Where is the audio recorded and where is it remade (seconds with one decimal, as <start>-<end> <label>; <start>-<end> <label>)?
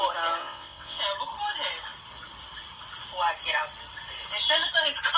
0.0-0.4 recorded; 0.4-1.0 remade; 1.0-5.2 recorded